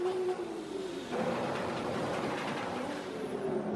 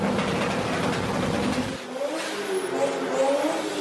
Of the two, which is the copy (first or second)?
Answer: first